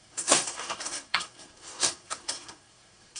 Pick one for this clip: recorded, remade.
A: remade